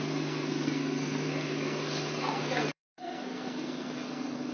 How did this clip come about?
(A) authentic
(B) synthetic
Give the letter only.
B